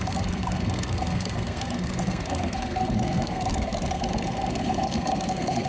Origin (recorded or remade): remade